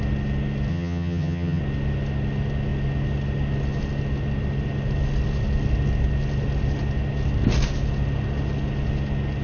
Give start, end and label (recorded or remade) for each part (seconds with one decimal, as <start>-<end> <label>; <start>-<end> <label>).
0.0-0.7 recorded; 0.7-1.6 remade; 1.6-9.4 recorded